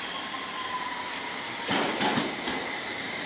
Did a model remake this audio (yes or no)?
no